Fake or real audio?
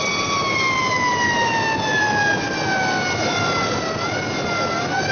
real